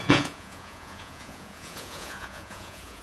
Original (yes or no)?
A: no